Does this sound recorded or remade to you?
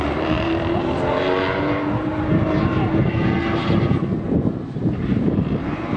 remade